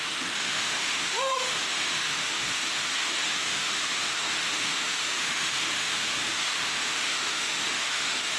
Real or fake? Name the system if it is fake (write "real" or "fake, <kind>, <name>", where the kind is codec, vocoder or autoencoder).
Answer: fake, autoencoder, DAC-VAE